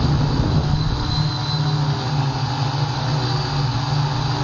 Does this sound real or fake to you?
real